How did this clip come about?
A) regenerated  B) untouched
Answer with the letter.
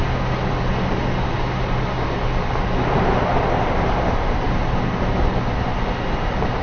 B